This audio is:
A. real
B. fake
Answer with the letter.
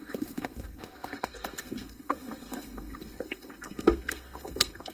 B